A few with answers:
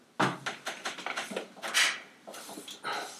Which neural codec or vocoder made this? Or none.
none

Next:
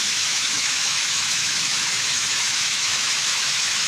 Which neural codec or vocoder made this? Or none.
autoencoder, DAC-VAE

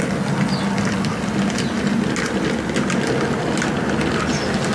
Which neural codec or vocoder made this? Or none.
none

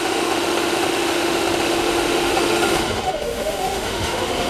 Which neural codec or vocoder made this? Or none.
autoencoder, DAC-VAE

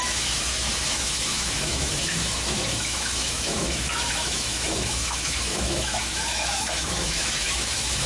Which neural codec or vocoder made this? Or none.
autoencoder, DAC-VAE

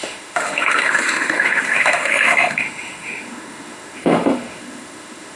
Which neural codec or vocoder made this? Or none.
autoencoder, DAC-VAE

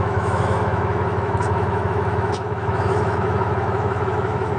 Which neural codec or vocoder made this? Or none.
autoencoder, DAC-VAE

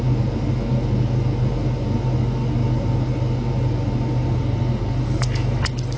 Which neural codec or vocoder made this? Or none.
none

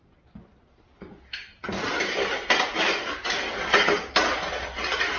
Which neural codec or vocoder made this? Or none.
none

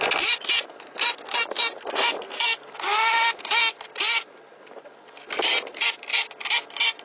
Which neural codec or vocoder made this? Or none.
none